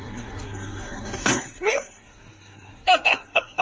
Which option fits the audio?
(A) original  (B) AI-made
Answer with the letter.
B